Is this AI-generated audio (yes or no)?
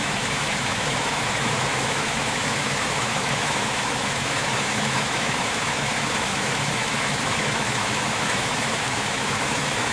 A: yes